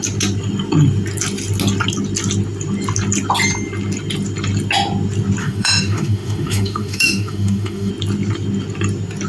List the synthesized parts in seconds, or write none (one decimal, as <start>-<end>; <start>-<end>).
5.4-7.9